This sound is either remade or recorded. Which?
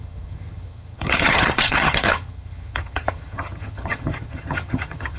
remade